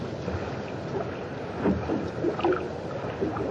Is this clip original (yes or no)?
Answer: yes